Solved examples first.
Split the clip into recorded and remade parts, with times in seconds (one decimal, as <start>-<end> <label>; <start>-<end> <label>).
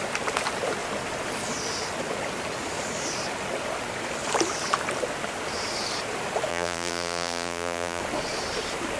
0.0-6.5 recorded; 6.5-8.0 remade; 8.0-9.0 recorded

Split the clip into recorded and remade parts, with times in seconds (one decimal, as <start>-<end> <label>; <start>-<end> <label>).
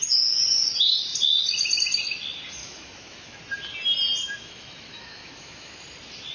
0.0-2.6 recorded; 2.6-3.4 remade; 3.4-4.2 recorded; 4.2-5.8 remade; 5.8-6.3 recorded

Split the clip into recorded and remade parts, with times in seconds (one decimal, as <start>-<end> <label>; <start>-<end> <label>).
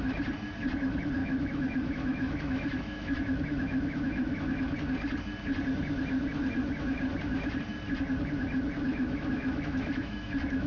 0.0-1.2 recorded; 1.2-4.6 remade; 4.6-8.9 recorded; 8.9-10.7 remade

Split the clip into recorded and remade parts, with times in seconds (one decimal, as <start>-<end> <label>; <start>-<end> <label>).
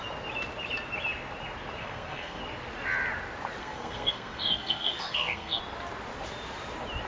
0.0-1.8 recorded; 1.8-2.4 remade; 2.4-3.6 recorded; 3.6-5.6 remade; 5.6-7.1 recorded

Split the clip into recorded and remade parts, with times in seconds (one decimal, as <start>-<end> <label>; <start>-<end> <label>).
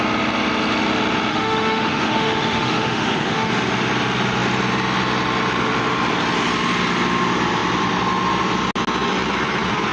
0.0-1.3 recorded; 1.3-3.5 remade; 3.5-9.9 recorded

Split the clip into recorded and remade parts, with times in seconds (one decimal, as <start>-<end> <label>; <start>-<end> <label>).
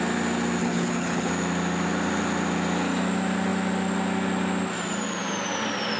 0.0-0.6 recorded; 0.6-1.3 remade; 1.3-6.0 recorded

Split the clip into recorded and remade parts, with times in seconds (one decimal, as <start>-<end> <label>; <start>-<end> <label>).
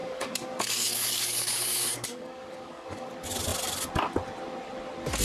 0.0-3.1 remade; 3.1-5.2 recorded